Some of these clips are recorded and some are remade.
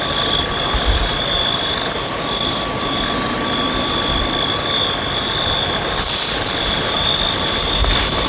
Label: recorded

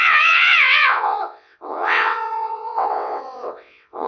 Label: remade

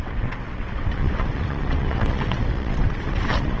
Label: remade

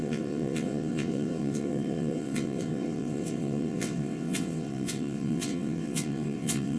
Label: remade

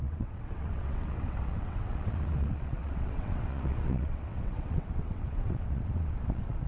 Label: remade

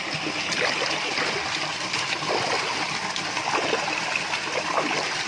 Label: recorded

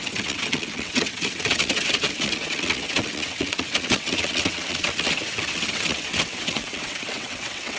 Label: remade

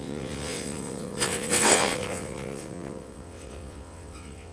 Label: remade